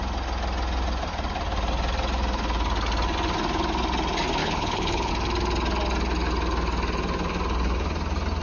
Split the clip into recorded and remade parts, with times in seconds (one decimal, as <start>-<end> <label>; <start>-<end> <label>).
0.0-4.4 recorded; 4.4-5.1 remade; 5.1-8.4 recorded